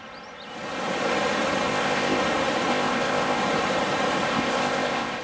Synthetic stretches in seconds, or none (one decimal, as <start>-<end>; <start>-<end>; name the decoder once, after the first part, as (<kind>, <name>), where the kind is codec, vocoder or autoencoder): 1.7-2.2 (codec, ZipCodec); 2.7-3.4; 4.3-5.2